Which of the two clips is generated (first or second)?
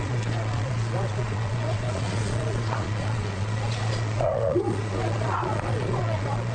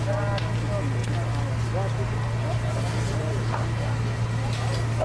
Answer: first